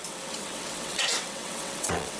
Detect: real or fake fake